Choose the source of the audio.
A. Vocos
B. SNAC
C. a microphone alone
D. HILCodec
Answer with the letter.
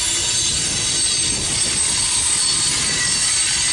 C